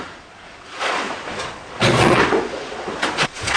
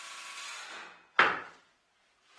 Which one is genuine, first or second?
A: second